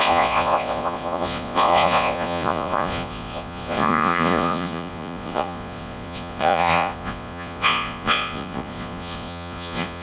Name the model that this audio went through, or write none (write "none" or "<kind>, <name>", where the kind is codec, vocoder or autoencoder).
vocoder, Vocos